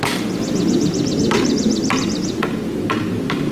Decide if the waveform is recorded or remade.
recorded